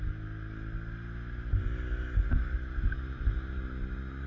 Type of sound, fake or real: real